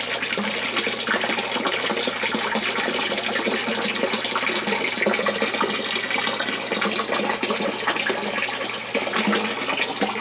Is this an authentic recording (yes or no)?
yes